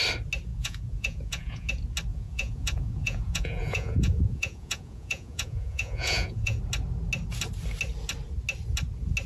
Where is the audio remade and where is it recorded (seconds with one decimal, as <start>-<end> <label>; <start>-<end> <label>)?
0.0-0.5 recorded; 0.5-1.7 remade; 1.7-2.1 recorded; 2.1-6.6 remade; 6.6-9.3 recorded